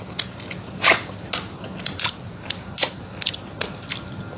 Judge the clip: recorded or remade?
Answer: recorded